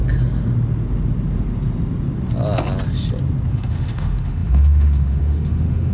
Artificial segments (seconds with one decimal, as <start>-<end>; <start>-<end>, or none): 3.5-5.9